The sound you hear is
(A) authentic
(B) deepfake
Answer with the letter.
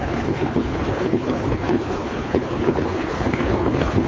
B